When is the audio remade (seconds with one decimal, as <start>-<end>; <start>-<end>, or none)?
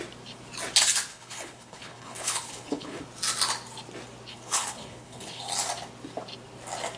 1.1-3.0; 4.3-5.4